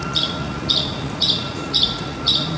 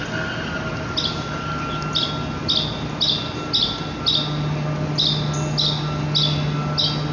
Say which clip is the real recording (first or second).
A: second